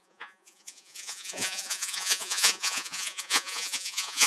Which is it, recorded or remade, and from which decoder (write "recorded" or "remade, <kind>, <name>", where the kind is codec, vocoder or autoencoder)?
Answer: remade, vocoder, Vocos